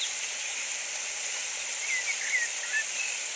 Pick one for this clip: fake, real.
real